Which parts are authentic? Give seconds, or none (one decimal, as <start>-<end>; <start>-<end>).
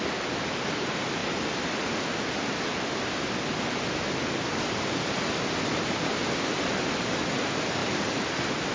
0.0-8.7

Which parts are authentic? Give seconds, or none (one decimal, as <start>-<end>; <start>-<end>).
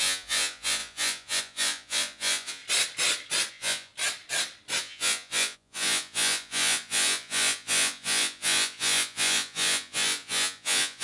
2.6-3.5; 3.9-4.8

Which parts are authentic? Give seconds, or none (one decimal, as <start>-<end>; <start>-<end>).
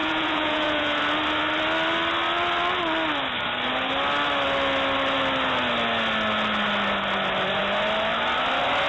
1.0-8.9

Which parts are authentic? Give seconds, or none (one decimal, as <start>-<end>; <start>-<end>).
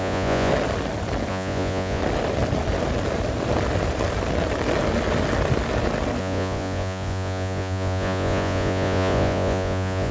0.5-1.3; 2.0-6.2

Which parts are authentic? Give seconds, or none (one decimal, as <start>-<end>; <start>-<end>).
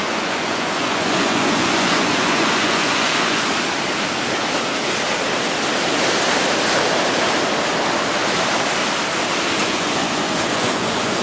3.5-9.6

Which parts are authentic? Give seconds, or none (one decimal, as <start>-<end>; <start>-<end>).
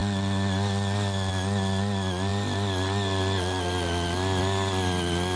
0.0-5.4